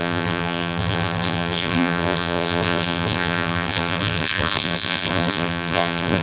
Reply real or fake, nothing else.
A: fake